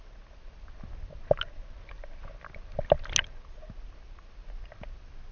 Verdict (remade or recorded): recorded